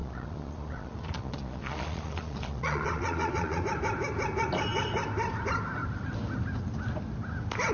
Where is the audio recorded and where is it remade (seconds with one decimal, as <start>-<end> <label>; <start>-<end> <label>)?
0.0-3.6 remade; 3.6-7.7 recorded

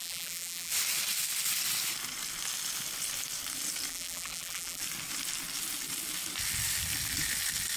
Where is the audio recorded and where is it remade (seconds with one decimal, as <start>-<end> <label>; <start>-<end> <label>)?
0.0-0.7 remade; 0.7-3.9 recorded; 3.9-4.8 remade; 4.8-7.8 recorded